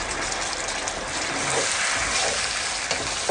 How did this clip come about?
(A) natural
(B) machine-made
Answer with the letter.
A